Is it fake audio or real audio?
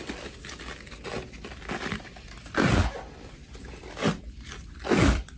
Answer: real